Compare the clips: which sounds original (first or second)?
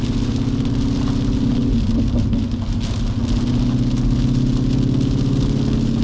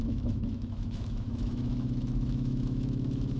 first